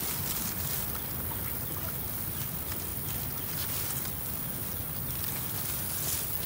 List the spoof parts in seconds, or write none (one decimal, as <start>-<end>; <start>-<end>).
none